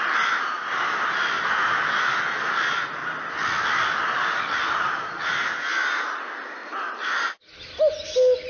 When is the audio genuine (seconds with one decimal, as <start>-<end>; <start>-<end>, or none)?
0.0-8.5